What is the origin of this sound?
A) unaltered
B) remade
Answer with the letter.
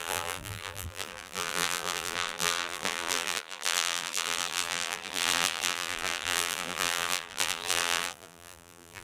B